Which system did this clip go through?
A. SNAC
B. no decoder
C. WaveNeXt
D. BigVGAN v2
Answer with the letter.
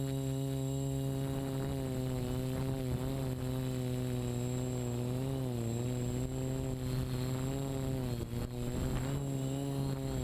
B